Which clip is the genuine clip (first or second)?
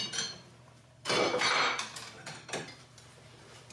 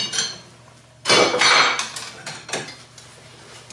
second